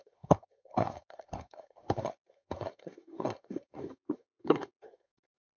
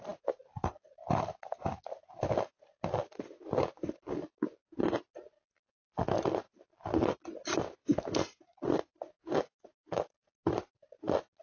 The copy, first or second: first